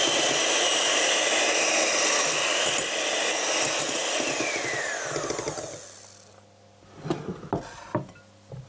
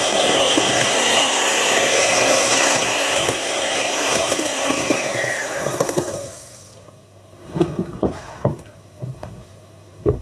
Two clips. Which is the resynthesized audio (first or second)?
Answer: second